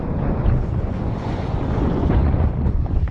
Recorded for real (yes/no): no